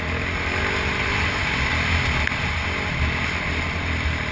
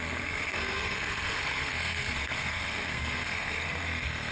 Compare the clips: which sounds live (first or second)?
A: first